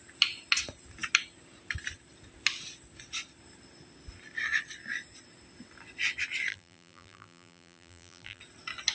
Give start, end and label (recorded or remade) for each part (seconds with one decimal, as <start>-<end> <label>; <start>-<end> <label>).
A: 0.0-6.5 recorded; 6.5-8.4 remade; 8.4-8.9 recorded